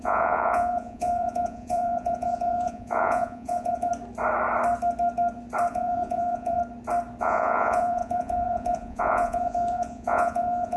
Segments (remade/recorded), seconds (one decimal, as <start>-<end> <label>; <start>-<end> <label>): 0.0-3.9 remade; 3.9-5.7 recorded; 5.7-6.6 remade; 6.6-7.2 recorded; 7.2-10.8 remade